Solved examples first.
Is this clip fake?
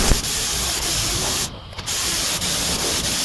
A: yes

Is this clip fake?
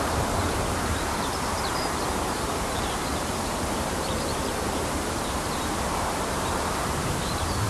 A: yes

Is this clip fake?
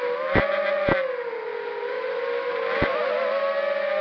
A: no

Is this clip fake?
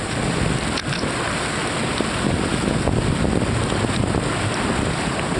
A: no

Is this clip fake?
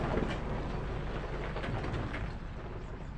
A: no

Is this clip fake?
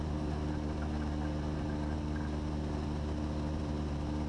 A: no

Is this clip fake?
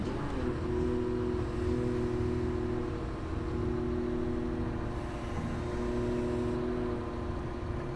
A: no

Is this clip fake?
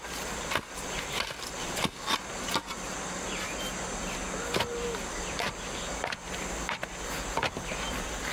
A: no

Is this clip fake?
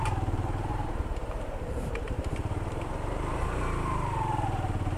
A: yes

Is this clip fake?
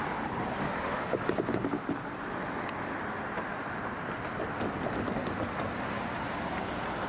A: no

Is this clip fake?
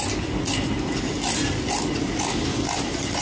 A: no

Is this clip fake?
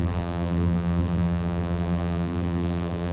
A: yes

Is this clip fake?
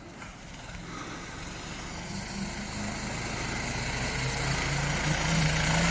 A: no